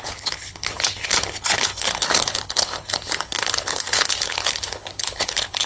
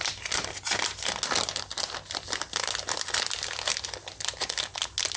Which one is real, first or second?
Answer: second